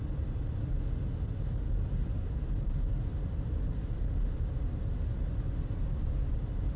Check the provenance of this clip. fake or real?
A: real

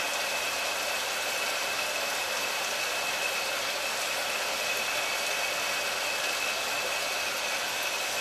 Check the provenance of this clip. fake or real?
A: real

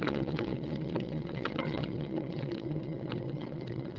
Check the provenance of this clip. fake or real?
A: fake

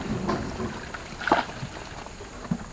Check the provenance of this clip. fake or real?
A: real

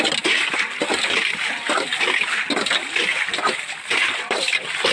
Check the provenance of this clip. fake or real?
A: real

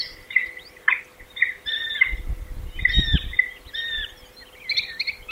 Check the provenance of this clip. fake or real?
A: real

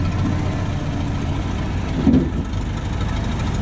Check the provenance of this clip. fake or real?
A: real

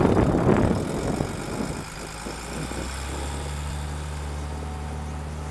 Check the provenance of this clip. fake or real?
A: real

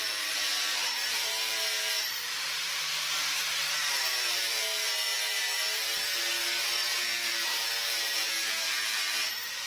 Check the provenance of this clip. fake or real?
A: fake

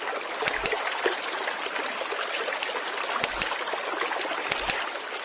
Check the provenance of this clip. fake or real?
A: real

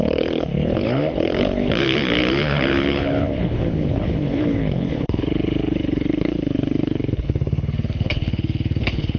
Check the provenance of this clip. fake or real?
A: fake